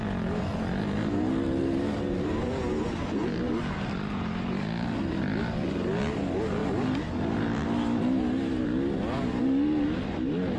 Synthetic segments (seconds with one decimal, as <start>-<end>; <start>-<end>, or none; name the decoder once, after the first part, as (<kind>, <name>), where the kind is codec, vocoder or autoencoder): none